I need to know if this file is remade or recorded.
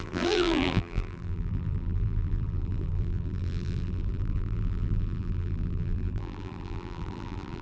remade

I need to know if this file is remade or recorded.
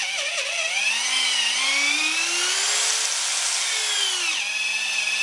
recorded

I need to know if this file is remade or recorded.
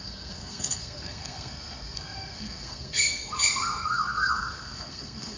remade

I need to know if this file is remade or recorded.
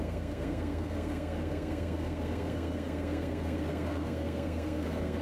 remade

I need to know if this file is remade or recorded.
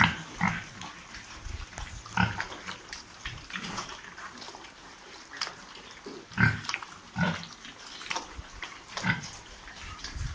recorded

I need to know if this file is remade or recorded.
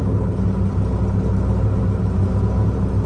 recorded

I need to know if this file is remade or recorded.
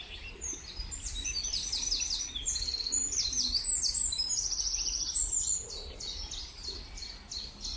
recorded